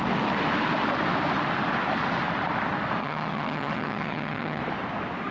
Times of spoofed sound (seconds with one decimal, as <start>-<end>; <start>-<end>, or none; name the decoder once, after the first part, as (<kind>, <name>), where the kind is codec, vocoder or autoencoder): 3.0-4.6 (vocoder, HiFi-GAN)

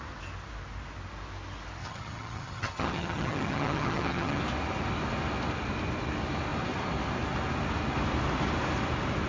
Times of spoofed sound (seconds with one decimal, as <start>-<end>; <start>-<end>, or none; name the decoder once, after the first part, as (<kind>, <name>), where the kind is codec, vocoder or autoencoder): 1.8-4.4 (vocoder, HiFi-GAN)

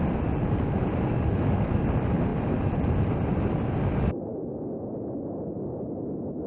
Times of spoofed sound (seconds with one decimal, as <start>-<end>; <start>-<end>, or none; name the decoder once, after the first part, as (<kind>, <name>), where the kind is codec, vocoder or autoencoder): none

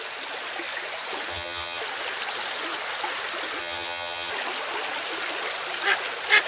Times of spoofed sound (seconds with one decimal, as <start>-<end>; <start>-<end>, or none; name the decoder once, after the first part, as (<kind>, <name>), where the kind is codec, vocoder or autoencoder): 1.3-1.8 (vocoder, HiFi-GAN); 3.6-4.3

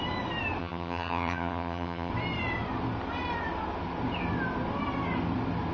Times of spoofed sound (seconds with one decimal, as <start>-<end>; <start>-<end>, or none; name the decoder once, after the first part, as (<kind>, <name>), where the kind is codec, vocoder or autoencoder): 0.6-2.1 (vocoder, HiFi-GAN)